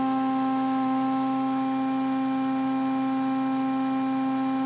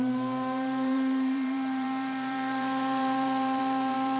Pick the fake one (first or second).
second